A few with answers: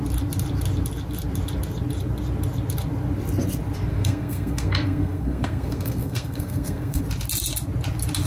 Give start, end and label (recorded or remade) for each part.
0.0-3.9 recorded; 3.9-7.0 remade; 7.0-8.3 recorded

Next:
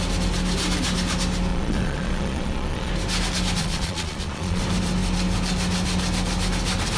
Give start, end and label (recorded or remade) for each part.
0.0-1.5 recorded; 1.5-2.9 remade; 2.9-3.6 recorded; 3.6-4.6 remade; 4.6-7.0 recorded

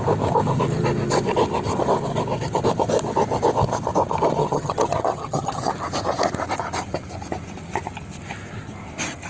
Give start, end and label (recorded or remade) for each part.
0.0-4.4 recorded; 4.4-5.7 remade; 5.7-9.3 recorded